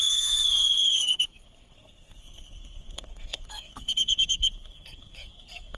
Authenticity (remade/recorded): remade